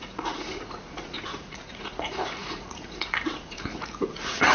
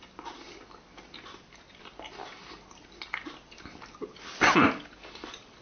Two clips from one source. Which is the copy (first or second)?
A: first